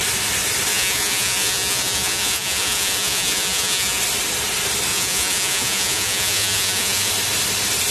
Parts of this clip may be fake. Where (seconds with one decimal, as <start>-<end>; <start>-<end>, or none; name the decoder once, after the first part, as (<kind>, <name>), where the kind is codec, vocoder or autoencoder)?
0.7-4.0 (vocoder, Vocos); 4.9-7.1